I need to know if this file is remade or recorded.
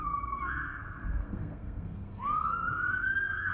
remade